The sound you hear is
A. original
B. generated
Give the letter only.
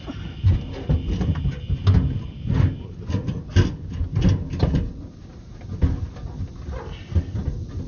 A